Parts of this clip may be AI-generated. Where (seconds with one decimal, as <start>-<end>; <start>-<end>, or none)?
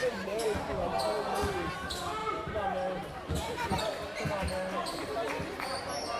0.0-1.0; 2.2-3.8